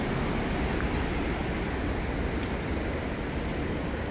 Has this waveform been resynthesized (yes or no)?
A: no